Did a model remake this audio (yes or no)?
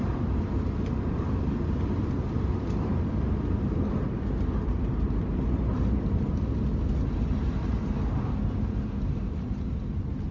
no